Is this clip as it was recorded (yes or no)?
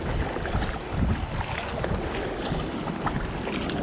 yes